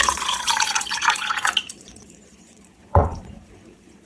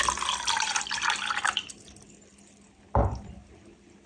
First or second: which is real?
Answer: second